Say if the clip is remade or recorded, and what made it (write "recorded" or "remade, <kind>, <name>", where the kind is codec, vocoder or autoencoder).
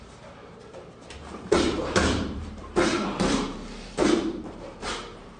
remade, vocoder, BigVGAN v2